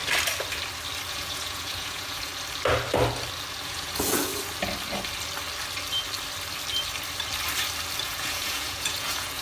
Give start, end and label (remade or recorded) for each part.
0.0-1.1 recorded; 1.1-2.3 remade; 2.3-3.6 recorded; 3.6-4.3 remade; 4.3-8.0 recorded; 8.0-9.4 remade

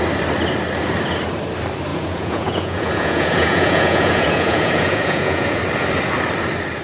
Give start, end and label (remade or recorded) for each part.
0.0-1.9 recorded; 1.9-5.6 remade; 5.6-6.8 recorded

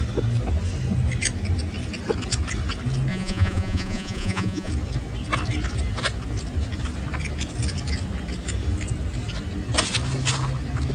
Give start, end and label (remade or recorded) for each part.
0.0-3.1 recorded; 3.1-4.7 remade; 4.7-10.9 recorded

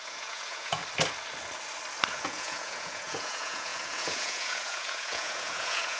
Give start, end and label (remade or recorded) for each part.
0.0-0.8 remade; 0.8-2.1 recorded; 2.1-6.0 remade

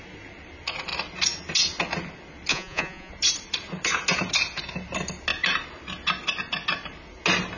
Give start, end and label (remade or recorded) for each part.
0.0-2.5 recorded; 2.5-3.1 remade; 3.1-7.6 recorded